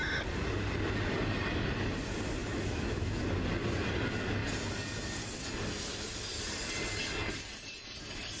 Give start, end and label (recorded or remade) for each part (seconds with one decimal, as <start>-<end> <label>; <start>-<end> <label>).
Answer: 0.0-2.4 recorded; 2.4-3.2 remade; 3.2-8.4 recorded